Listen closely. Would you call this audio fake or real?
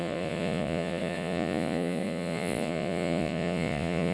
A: fake